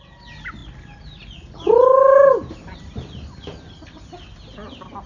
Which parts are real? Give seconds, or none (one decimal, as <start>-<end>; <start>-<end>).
0.0-5.1